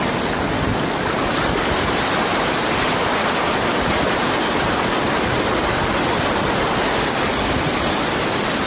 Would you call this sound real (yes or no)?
yes